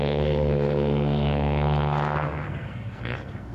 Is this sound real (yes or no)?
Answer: no